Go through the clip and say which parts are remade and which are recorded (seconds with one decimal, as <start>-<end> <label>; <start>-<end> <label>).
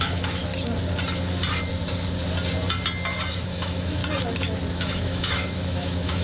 0.0-0.5 remade; 0.5-3.3 recorded; 3.3-4.0 remade; 4.0-4.7 recorded; 4.7-6.2 remade